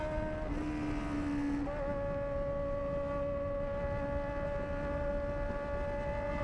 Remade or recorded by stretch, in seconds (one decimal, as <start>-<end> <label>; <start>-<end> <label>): 0.0-6.4 recorded